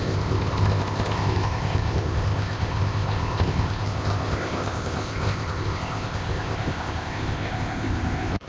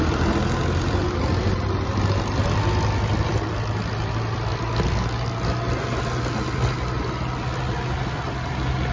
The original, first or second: second